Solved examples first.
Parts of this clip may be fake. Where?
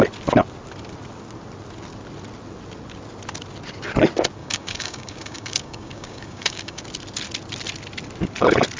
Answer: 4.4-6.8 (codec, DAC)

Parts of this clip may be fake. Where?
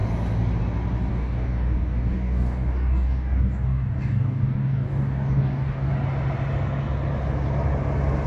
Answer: 1.1-5.9 (codec, DAC)